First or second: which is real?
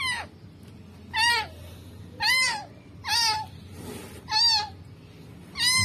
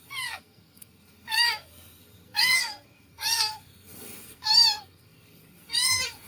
first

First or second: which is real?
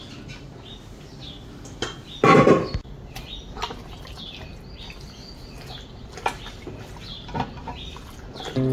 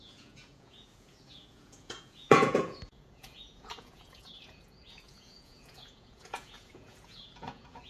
first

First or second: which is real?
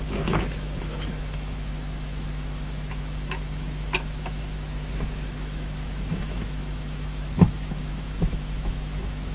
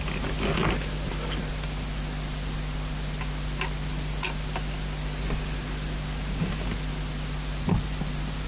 second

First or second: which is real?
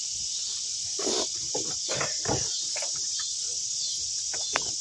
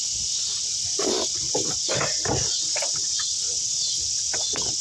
first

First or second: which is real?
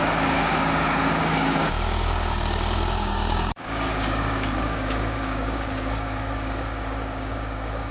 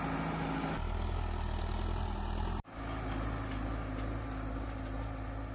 second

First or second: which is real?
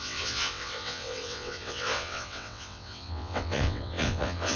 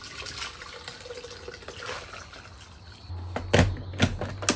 second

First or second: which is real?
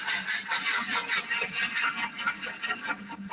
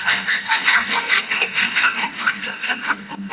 first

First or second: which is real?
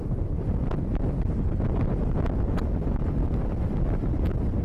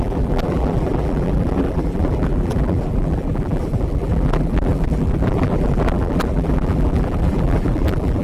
first